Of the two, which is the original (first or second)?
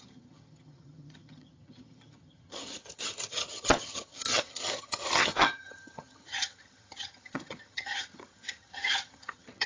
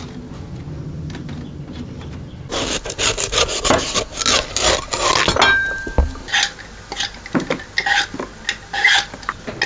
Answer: second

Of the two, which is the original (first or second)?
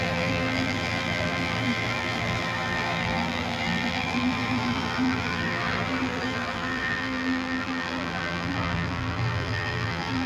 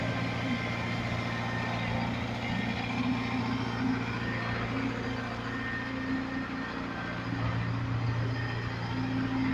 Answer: second